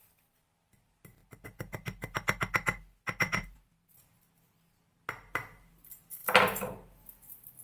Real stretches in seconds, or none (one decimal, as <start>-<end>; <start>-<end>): 0.0-7.6